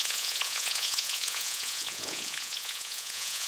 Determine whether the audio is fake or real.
fake